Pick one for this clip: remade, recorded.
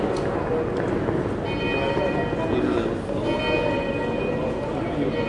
recorded